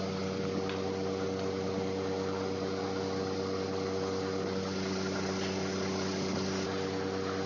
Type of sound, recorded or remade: recorded